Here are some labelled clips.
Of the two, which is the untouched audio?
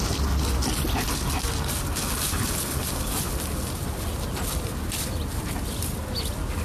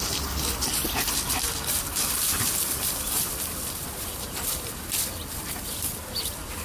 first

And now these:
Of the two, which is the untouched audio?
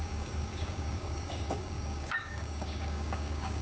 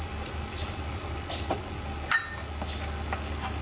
second